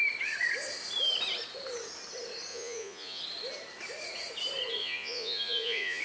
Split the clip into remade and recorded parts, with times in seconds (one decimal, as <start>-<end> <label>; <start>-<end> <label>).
0.0-2.5 recorded; 2.5-3.2 remade; 3.2-4.8 recorded; 4.8-6.0 remade